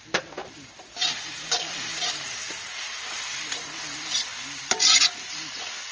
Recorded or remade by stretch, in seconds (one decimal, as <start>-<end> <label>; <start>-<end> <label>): 0.0-0.4 recorded; 0.4-1.5 remade; 1.5-1.9 recorded; 1.9-2.6 remade; 2.6-5.9 recorded